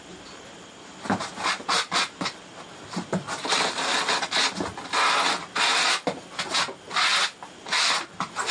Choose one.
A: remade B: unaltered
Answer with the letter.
B